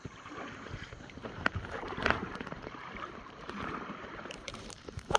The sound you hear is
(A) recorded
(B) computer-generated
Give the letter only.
B